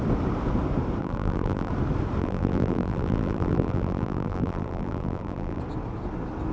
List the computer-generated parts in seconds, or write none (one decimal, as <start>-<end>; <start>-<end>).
1.0-1.7; 2.2-5.6